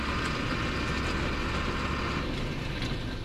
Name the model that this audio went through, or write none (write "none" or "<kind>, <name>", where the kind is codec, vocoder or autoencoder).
none